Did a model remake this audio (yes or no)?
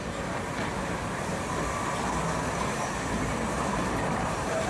yes